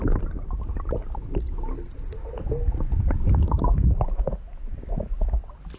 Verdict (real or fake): real